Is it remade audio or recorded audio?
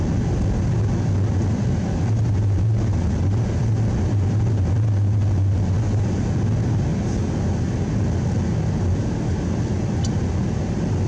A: recorded